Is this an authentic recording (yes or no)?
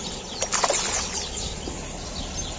yes